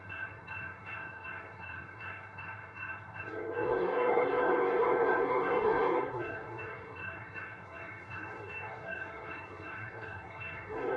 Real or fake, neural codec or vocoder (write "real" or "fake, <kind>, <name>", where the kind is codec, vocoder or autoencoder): fake, codec, SNAC